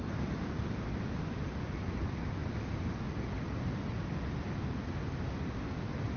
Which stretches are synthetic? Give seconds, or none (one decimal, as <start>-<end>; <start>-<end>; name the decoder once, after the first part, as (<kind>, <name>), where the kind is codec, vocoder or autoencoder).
none